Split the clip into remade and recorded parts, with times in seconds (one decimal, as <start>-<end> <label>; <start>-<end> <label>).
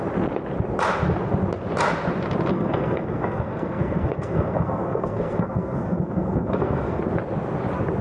0.0-2.5 recorded; 2.5-7.0 remade; 7.0-8.0 recorded